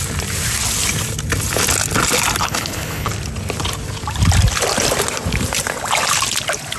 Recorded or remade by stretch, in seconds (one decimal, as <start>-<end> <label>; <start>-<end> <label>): 0.0-2.4 recorded; 2.4-3.1 remade; 3.1-6.8 recorded